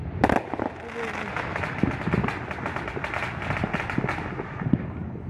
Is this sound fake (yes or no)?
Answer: no